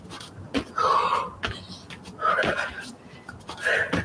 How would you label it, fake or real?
real